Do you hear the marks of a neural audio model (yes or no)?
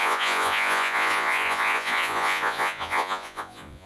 yes